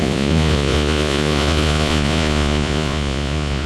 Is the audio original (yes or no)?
no